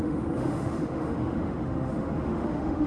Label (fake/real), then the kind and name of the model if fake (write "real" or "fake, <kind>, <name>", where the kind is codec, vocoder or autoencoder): fake, autoencoder, DAC-VAE